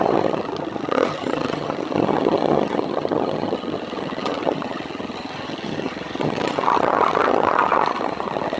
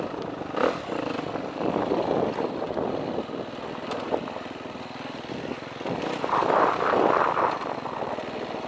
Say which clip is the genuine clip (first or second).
second